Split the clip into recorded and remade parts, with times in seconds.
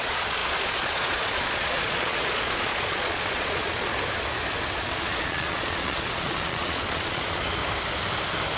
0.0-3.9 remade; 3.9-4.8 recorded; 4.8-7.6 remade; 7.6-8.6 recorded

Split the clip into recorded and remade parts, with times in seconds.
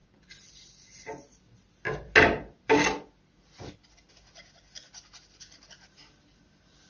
0.0-6.9 recorded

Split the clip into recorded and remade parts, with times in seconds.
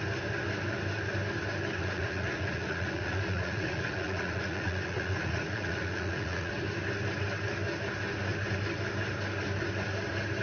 0.0-1.8 recorded; 1.8-6.5 remade; 6.5-10.4 recorded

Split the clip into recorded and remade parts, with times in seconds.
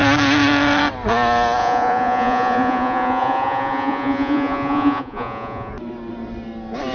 0.0-1.6 recorded; 1.6-5.7 remade; 5.7-6.9 recorded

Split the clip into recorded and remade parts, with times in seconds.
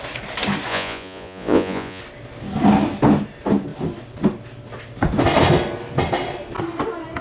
0.0-0.7 recorded; 0.7-2.0 remade; 2.0-7.2 recorded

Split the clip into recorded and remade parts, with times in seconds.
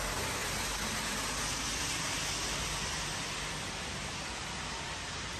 0.0-5.4 recorded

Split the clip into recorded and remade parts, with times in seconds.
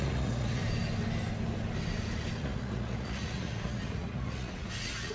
0.0-0.6 remade; 0.6-2.4 recorded; 2.4-5.1 remade